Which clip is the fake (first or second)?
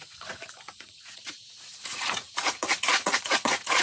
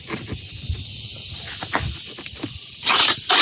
first